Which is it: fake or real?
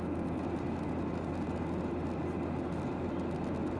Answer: real